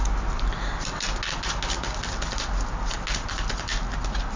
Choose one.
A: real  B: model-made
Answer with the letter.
A